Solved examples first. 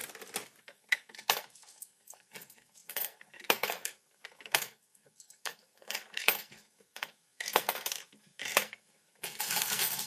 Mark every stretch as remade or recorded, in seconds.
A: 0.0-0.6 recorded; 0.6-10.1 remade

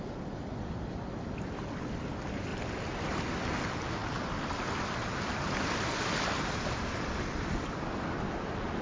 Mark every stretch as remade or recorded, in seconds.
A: 0.0-8.8 recorded

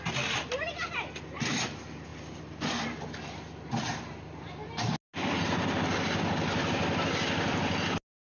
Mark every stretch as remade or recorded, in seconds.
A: 0.0-8.3 recorded

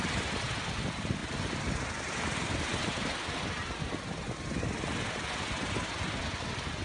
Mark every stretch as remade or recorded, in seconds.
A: 0.0-6.8 recorded

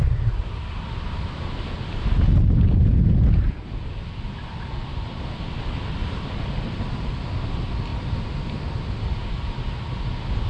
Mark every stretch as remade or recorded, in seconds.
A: 0.0-10.5 recorded

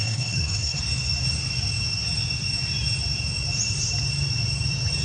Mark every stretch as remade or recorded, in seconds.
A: 0.0-0.8 remade; 0.8-5.0 recorded

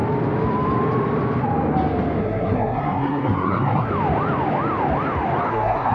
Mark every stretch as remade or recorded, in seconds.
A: 0.0-2.2 recorded; 2.2-3.9 remade; 3.9-5.5 recorded; 5.5-5.9 remade